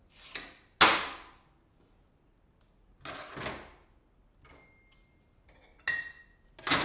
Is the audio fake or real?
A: real